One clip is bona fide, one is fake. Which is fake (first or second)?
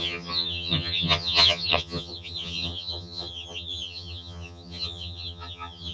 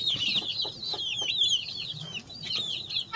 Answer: first